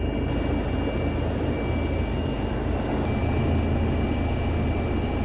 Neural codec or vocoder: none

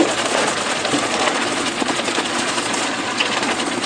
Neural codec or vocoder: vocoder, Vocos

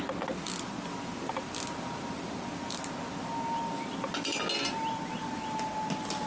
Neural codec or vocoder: none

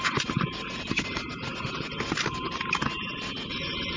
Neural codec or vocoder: vocoder, BigVGAN v2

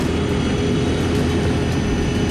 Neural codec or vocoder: none